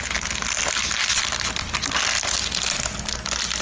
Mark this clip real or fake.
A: real